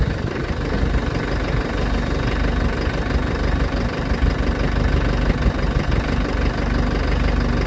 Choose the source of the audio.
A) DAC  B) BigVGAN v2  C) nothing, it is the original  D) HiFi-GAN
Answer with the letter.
C